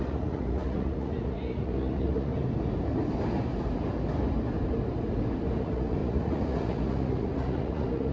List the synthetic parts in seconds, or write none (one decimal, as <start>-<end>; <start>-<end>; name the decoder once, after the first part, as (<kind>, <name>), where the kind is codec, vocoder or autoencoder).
0.0-2.3 (vocoder, Vocos); 5.6-8.1